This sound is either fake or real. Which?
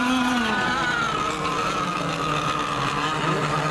real